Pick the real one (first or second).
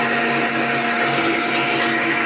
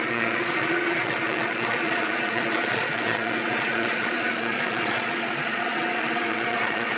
first